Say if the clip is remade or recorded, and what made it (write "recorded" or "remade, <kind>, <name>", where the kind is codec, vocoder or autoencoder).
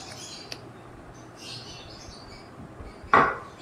recorded